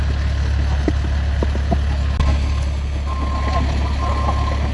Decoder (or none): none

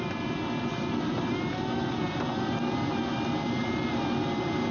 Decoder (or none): none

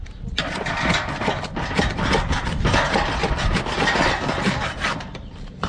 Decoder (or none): none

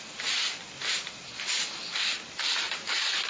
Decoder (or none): vocoder, BigVGAN v2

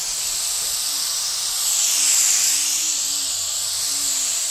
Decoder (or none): none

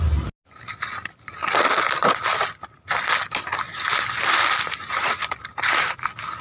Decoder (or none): none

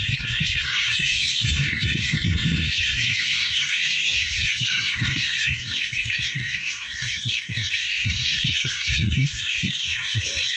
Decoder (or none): codec, SNAC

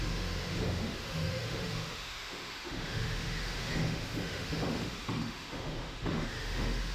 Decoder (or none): autoencoder, DAC-VAE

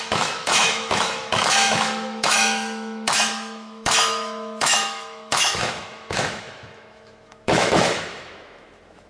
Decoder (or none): autoencoder, DAC-VAE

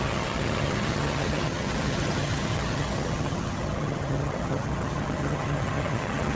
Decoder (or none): vocoder, HiFi-GAN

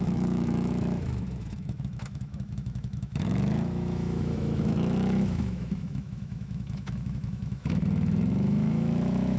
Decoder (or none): autoencoder, DAC-VAE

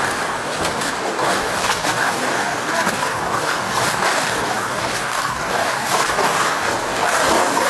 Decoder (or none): codec, DAC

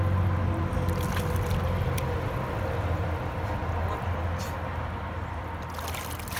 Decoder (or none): none